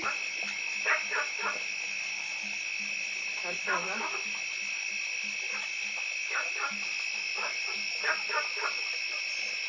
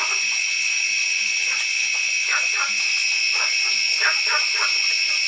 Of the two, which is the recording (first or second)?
first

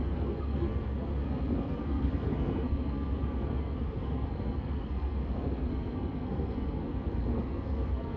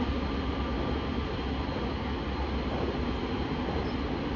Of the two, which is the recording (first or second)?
second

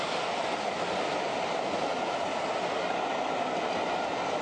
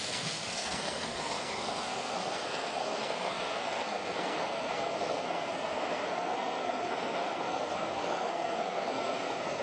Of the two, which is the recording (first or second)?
first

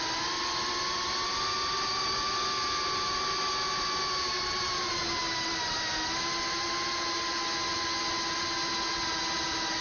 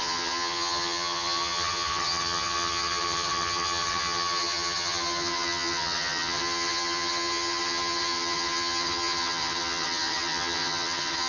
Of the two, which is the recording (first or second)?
first